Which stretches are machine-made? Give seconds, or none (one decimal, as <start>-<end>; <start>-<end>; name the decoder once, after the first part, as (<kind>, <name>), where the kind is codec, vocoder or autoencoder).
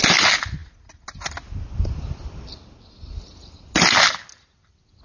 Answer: none